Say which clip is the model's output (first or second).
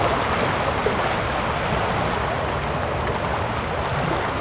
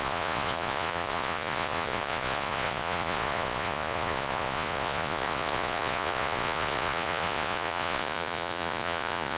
second